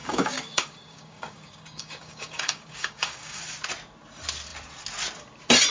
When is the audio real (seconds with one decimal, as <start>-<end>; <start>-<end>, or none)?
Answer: 3.4-5.7